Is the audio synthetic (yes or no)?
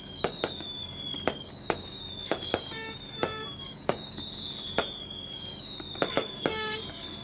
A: yes